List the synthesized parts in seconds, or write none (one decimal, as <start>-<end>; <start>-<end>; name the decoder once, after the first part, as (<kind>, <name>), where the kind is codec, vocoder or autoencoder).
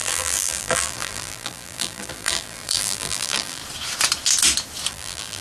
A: 0.0-3.6 (vocoder, BigVGAN v2); 4.9-5.4